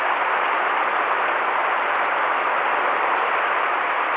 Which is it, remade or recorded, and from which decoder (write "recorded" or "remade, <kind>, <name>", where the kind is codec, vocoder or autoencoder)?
recorded